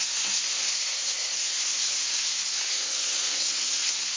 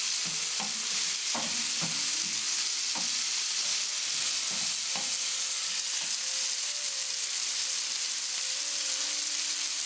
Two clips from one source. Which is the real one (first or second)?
second